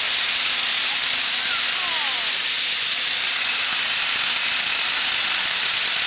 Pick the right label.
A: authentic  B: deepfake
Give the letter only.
A